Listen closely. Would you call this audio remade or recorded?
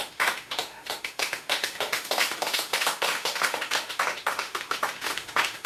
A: remade